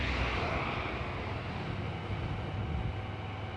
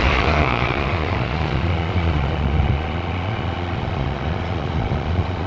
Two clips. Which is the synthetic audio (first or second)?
second